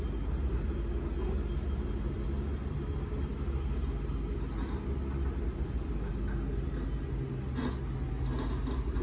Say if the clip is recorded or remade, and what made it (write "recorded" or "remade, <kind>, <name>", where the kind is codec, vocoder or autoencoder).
recorded